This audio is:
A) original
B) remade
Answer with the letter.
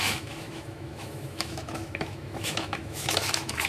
B